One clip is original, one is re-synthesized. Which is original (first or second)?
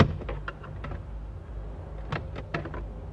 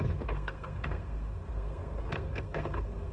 first